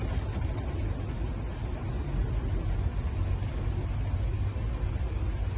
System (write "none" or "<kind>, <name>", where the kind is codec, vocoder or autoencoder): none